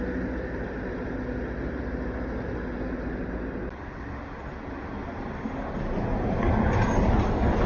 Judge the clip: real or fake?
real